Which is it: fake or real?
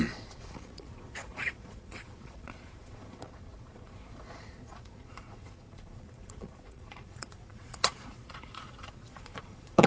fake